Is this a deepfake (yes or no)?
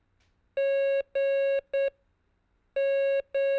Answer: no